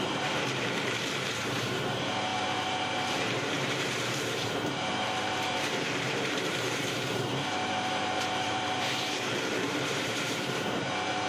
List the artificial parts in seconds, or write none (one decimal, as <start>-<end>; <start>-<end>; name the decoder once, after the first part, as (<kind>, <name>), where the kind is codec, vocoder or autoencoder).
0.0-11.3 (vocoder, BigVGAN v2)